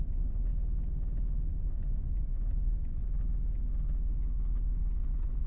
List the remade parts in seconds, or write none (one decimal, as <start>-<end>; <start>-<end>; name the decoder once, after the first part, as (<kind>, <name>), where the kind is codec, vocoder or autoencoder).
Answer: 0.0-0.5 (vocoder, Vocos); 1.5-3.0; 5.0-5.5